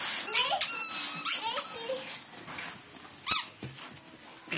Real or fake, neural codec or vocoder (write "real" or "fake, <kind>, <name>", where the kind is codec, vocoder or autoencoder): real